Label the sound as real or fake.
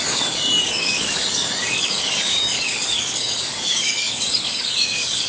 fake